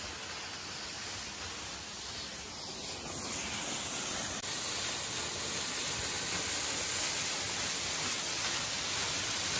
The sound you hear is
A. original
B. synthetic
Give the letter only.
A